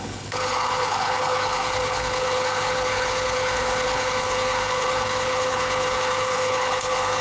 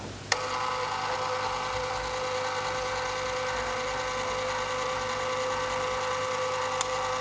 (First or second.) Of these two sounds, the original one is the second